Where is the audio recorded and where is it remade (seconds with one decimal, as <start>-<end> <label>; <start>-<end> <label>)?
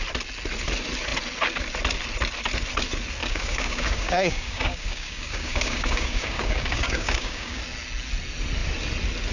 0.0-3.2 recorded; 3.2-7.6 remade; 7.6-9.3 recorded